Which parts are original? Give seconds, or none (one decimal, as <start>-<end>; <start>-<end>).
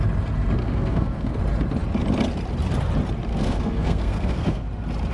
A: 0.0-0.6; 1.4-3.3; 4.6-5.1